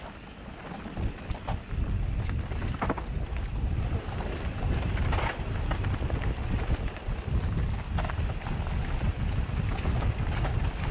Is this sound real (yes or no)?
yes